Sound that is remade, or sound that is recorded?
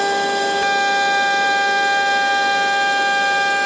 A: recorded